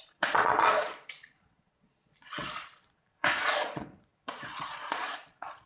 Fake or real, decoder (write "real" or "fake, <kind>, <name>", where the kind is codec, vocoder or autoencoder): fake, vocoder, Vocos